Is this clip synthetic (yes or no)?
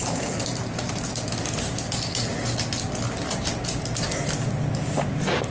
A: no